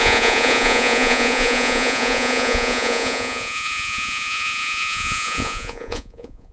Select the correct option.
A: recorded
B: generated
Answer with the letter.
B